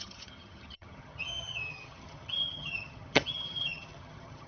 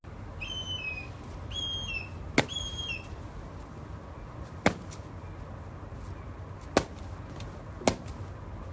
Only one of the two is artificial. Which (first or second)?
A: first